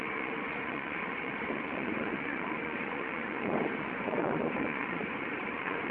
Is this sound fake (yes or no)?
yes